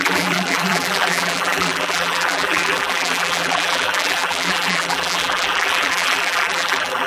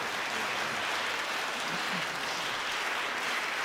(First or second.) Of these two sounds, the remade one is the first